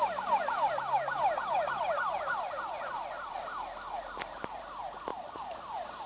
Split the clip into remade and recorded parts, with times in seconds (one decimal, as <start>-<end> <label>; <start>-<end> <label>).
0.0-6.1 recorded

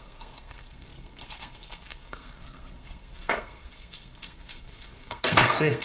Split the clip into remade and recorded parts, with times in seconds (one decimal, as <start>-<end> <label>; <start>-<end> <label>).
0.0-5.8 remade